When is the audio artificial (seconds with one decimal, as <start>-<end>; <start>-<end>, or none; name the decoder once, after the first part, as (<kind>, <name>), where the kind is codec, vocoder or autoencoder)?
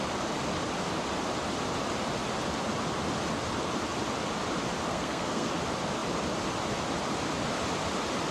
4.9-5.5 (codec, SNAC)